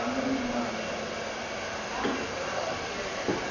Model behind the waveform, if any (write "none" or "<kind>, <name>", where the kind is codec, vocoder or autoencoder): none